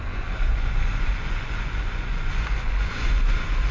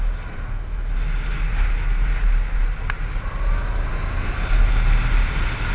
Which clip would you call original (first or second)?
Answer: second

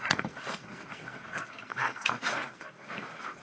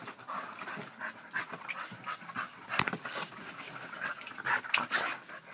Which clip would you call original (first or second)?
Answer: second